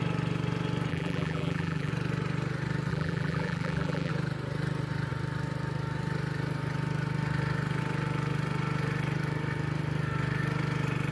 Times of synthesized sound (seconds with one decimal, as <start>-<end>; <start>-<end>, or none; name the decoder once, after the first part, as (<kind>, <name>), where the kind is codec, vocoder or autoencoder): 0.9-1.9 (vocoder, BigVGAN v2); 2.9-4.1